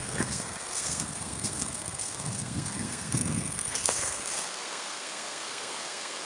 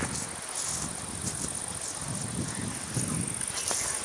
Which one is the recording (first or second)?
second